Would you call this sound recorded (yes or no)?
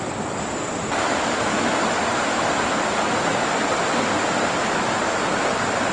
yes